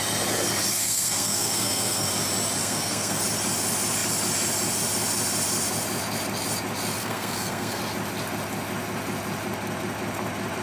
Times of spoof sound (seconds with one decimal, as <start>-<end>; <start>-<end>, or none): 0.7-2.1; 2.6-3.2; 7.0-7.8